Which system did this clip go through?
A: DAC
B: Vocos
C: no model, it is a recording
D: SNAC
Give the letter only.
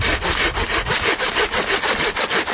C